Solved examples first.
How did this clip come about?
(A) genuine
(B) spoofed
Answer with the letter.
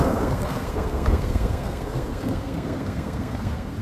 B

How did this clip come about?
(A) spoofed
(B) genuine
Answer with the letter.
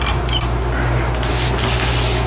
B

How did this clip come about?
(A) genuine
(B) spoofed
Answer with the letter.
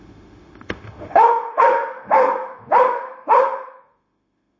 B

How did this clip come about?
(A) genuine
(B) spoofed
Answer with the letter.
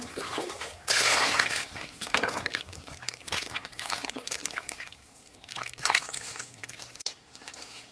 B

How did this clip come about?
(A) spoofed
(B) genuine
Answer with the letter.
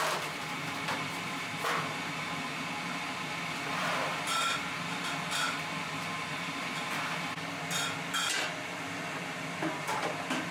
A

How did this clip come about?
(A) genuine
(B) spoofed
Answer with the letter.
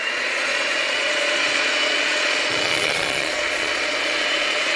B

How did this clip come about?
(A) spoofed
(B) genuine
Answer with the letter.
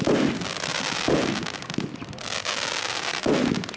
B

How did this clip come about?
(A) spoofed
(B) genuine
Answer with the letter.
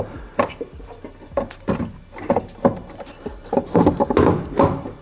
B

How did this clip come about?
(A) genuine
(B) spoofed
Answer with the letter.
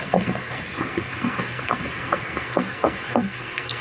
B